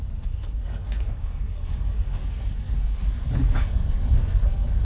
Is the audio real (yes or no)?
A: no